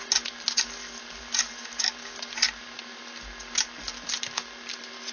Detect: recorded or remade recorded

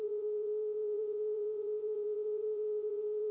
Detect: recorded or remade remade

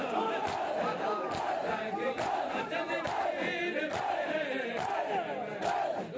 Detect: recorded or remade recorded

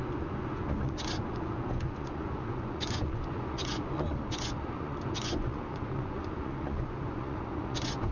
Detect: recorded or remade remade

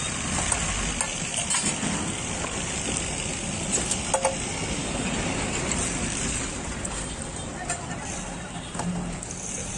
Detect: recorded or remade recorded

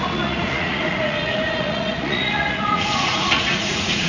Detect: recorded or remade remade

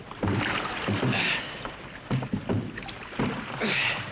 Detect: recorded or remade recorded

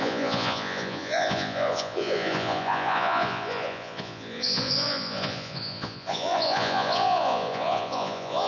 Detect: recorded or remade remade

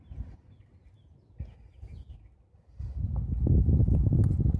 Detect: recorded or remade recorded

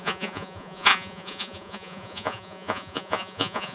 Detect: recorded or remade remade